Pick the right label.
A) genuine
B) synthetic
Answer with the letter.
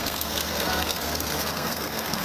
B